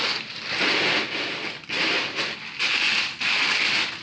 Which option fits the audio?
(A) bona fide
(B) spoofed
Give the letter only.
A